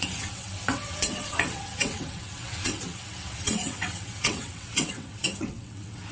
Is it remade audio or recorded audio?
remade